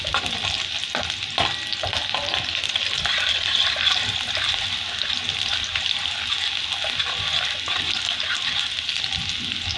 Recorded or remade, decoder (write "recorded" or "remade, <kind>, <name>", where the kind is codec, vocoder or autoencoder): recorded